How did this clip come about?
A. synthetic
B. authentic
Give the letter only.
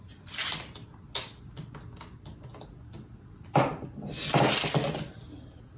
B